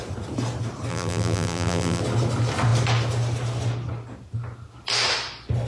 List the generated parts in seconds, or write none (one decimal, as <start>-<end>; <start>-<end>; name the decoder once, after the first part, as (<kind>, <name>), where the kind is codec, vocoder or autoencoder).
0.9-2.0 (vocoder, BigVGAN v2)